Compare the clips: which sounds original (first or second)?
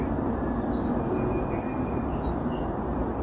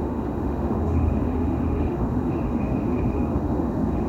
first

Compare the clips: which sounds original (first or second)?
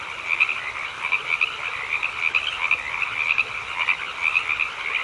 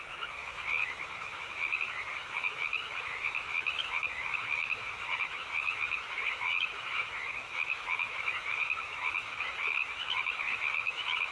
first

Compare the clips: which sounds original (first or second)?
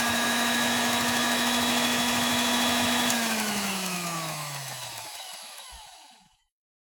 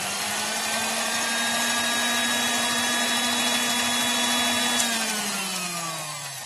second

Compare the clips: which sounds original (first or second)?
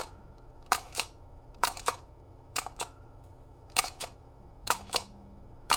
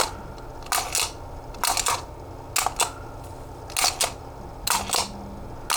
second